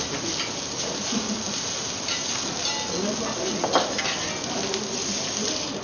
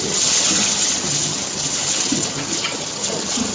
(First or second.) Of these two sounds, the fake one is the second